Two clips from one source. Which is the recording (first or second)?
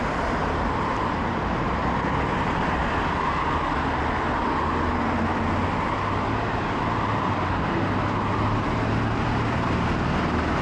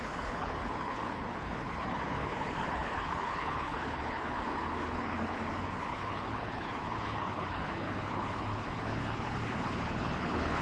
first